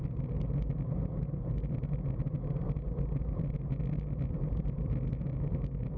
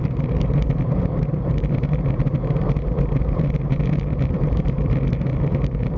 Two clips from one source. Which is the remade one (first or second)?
second